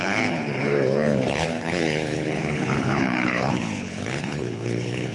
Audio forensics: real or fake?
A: fake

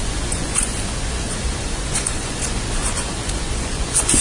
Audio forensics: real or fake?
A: fake